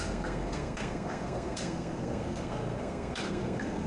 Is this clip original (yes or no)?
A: no